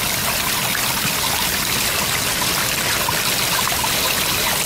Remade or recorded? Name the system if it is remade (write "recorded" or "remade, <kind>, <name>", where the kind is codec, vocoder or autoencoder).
recorded